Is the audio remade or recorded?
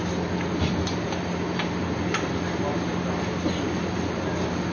recorded